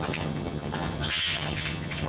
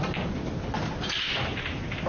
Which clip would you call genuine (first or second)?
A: second